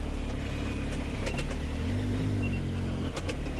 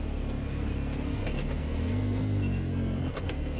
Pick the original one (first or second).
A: first